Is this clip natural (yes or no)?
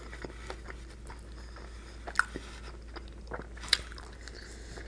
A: yes